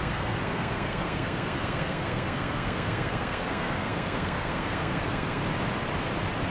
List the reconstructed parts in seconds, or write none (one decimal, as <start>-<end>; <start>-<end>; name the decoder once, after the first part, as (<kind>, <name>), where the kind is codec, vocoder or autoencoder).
0.0-5.4 (codec, SNAC)